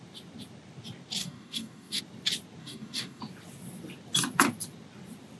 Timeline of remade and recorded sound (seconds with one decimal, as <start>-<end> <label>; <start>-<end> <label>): 0.0-1.2 recorded; 1.2-2.0 remade; 2.0-2.6 recorded; 2.6-3.2 remade; 3.2-5.4 recorded

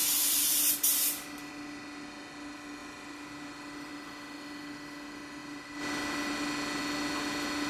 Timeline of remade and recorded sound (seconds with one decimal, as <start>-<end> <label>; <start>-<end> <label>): 0.0-1.5 remade; 1.5-2.8 recorded; 2.8-3.9 remade; 3.9-7.7 recorded

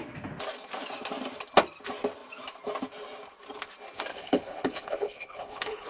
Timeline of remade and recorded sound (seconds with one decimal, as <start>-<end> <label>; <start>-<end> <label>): 0.0-4.1 recorded; 4.1-5.9 remade